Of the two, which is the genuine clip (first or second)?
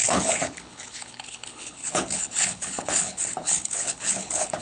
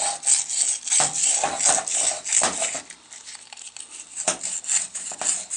second